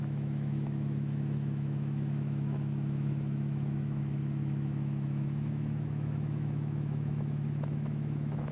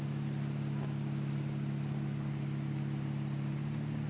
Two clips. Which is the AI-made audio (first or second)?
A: first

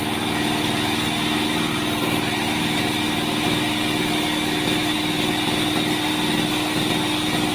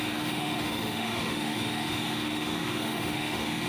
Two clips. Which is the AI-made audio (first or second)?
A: second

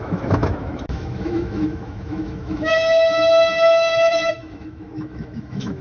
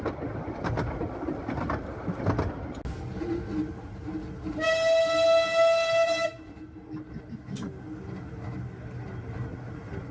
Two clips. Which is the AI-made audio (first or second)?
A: first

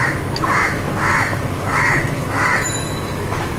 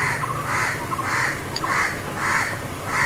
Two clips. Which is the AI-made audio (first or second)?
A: first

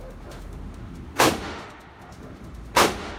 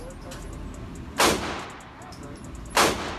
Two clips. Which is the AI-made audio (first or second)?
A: first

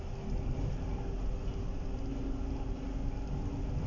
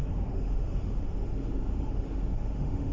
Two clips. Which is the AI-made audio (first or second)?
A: second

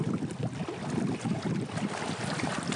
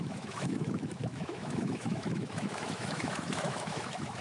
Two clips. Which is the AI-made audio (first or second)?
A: second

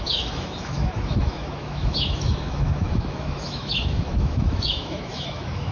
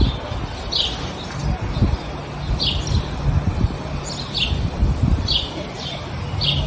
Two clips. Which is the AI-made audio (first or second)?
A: first